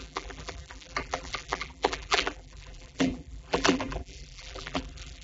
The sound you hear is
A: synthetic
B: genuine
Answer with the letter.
A